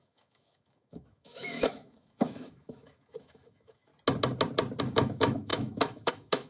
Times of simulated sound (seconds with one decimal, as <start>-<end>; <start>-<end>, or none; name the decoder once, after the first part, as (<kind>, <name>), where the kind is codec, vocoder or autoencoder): 0.0-3.9 (autoencoder, DAC-VAE); 4.8-6.5